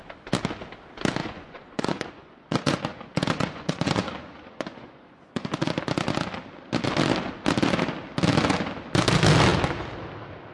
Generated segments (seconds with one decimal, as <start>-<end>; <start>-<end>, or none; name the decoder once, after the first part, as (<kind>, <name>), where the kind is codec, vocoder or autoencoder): 1.2-5.8 (vocoder, Vocos)

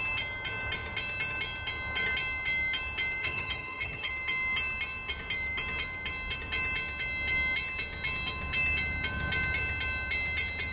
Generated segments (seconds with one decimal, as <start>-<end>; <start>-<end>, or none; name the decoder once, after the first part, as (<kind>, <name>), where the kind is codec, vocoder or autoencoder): 3.2-4.1 (vocoder, HiFi-GAN)

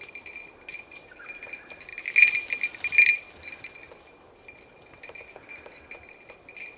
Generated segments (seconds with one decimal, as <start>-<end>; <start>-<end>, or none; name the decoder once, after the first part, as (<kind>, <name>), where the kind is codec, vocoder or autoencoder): none

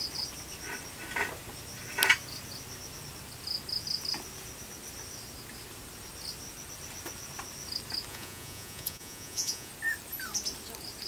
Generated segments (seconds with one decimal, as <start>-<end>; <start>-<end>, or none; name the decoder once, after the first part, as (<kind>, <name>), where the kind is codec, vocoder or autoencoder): 8.1-9.7 (vocoder, Vocos)

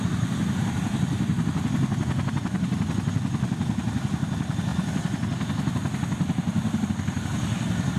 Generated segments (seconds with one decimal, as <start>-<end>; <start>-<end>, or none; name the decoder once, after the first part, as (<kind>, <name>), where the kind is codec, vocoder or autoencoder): none

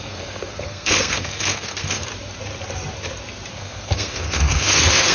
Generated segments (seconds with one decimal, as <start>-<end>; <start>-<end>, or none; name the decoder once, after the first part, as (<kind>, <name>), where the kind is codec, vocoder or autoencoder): 0.0-2.1 (codec, SNAC); 3.5-5.1

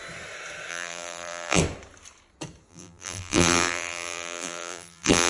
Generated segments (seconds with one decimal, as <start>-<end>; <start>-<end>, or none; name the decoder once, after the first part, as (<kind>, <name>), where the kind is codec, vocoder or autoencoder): 0.7-1.6 (vocoder, BigVGAN v2); 2.7-5.3